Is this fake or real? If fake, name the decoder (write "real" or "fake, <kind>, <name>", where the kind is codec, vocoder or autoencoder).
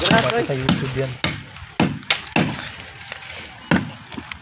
real